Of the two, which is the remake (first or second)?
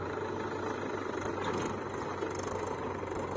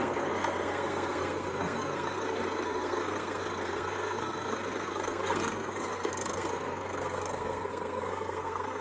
second